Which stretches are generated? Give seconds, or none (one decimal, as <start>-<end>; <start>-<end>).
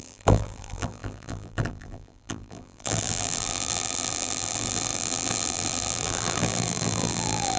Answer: 0.0-7.6